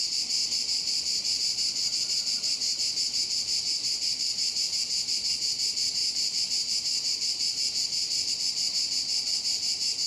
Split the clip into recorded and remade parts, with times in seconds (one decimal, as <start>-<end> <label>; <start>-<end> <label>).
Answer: 0.0-10.1 remade

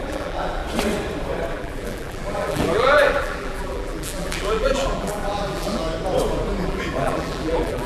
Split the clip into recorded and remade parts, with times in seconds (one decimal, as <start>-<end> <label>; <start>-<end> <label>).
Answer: 0.0-0.6 remade; 0.6-1.5 recorded; 1.5-5.8 remade; 5.8-6.6 recorded; 6.6-7.9 remade

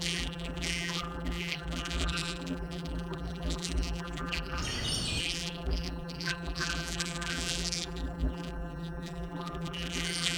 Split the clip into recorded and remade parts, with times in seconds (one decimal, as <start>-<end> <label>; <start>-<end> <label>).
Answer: 0.0-4.6 remade; 4.6-5.2 recorded; 5.2-10.4 remade

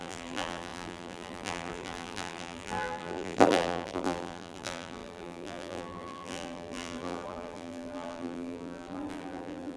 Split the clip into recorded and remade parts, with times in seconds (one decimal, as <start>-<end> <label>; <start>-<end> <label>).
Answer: 0.0-9.8 remade